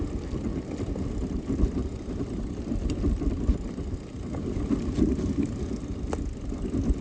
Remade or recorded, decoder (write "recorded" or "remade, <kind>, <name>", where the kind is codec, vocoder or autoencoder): recorded